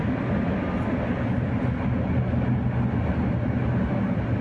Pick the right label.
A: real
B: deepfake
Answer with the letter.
A